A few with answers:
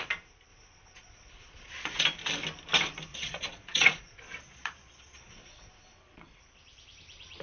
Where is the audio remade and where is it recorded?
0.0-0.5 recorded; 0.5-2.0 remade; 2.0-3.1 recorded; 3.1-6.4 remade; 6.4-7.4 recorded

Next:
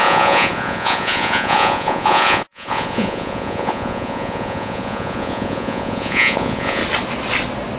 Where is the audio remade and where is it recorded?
0.0-6.8 remade; 6.8-7.8 recorded

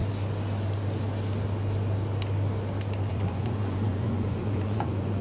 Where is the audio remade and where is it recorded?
0.0-3.1 recorded; 3.1-5.2 remade

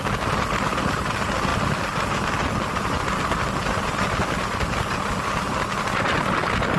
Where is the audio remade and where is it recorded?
0.0-6.8 recorded

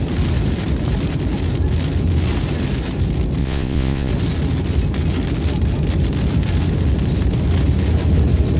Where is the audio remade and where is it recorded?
0.0-3.4 recorded; 3.4-4.1 remade; 4.1-8.6 recorded

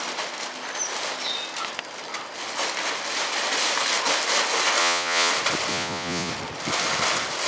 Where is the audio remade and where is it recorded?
0.0-4.8 recorded; 4.8-5.3 remade; 5.3-5.7 recorded; 5.7-6.3 remade; 6.3-7.5 recorded

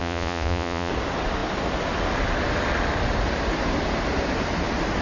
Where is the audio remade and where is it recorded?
0.0-0.9 remade; 0.9-5.0 recorded